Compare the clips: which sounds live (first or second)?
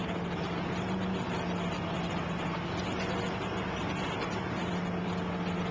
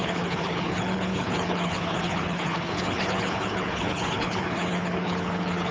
first